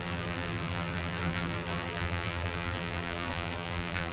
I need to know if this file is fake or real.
fake